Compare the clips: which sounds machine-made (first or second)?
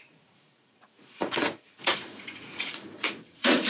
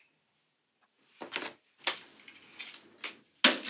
first